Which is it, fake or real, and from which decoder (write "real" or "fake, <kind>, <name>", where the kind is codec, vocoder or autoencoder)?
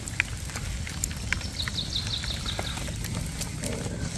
real